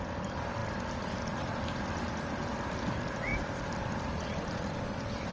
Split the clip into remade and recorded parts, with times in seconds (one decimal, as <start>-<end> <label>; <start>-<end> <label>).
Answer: 0.0-5.3 recorded